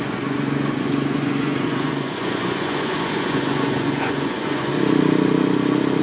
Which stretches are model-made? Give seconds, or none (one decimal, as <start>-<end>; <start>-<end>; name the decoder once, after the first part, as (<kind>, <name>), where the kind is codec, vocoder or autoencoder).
0.0-4.7 (vocoder, Vocos)